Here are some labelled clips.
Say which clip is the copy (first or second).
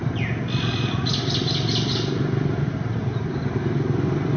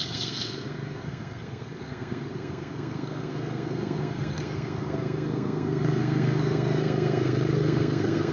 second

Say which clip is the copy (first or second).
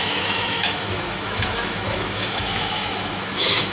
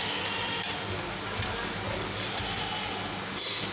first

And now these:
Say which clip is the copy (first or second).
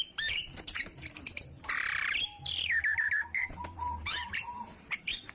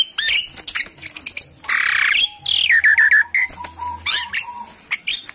first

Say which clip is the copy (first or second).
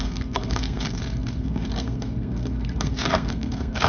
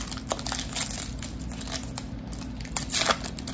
first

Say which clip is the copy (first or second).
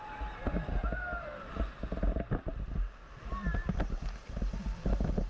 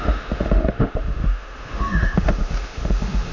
second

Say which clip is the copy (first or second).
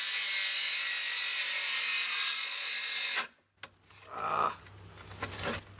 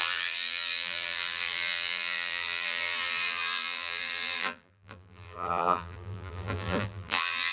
second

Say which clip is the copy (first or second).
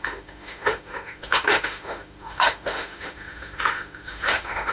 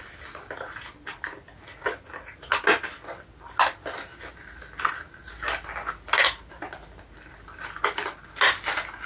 first